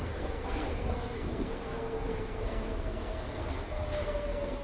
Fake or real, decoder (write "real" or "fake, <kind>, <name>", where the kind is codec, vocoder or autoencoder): fake, codec, SNAC